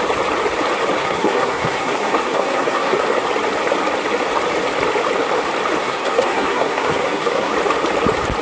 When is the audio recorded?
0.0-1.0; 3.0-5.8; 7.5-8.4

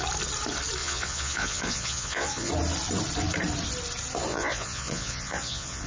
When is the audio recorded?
0.0-0.8; 2.5-4.3